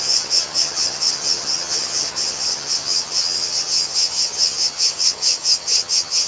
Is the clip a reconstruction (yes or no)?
yes